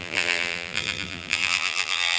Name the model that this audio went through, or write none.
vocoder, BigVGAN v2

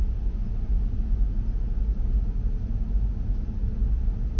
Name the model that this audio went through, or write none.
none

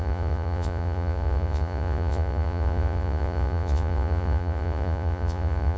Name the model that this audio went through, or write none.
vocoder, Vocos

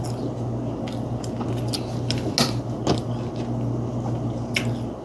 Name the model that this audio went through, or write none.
none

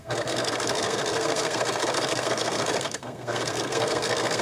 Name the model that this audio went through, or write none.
codec, SNAC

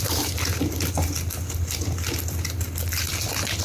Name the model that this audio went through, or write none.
none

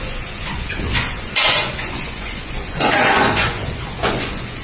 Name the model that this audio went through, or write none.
vocoder, Vocos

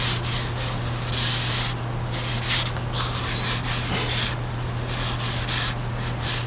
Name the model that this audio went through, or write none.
none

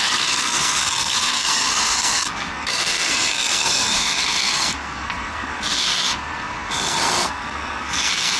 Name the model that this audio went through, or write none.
codec, SNAC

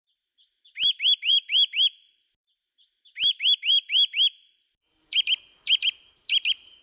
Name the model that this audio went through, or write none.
vocoder, BigVGAN v2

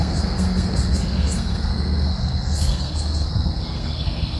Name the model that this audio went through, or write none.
codec, SNAC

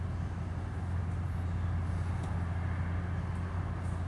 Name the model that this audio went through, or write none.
none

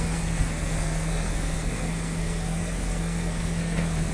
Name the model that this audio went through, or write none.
codec, SNAC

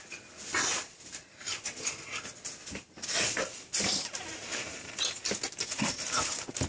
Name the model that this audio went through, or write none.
none